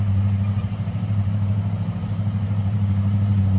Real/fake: fake